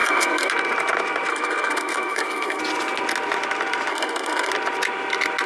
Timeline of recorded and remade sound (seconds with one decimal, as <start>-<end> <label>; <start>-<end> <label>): 0.0-0.5 remade; 0.5-1.3 recorded; 1.3-2.6 remade; 2.6-3.9 recorded; 3.9-4.5 remade; 4.5-5.5 recorded